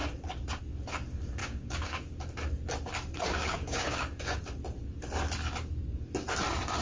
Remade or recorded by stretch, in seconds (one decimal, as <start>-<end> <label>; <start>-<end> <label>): 0.0-1.4 recorded; 1.4-2.1 remade; 2.1-3.3 recorded; 3.3-4.4 remade; 4.4-6.8 recorded